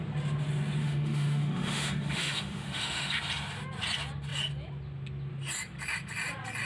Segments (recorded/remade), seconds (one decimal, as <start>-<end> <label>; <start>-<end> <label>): 0.0-0.8 recorded; 0.8-3.1 remade; 3.1-6.7 recorded